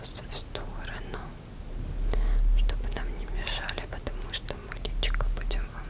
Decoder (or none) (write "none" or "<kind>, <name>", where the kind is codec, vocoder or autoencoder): none